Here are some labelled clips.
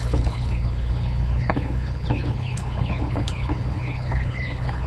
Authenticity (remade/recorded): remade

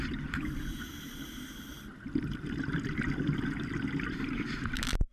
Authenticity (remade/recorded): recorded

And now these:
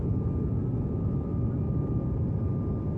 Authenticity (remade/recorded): recorded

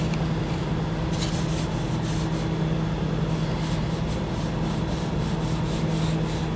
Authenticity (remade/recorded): recorded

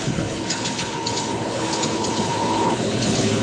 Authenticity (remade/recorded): remade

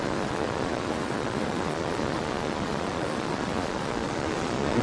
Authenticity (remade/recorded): remade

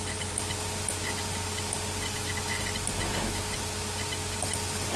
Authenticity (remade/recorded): recorded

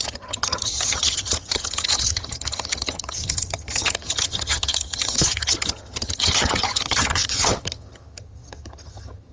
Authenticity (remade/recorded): remade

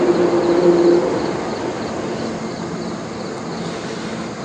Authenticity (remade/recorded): recorded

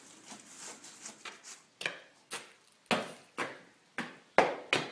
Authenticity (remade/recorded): recorded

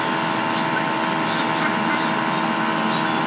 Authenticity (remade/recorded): recorded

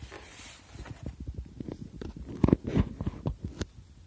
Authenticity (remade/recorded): recorded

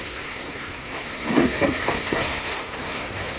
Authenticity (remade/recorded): remade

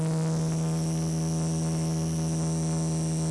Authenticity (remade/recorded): recorded